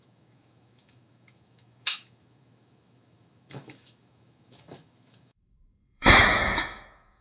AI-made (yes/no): yes